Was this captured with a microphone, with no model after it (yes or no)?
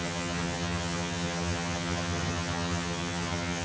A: no